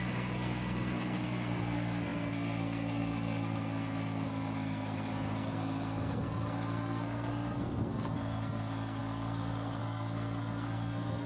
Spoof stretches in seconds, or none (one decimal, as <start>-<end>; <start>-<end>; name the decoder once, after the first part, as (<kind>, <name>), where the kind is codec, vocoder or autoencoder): 0.0-11.3 (codec, SNAC)